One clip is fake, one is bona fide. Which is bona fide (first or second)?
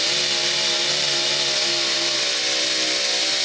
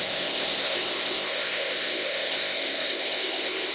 first